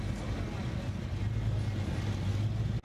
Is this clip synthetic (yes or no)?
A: no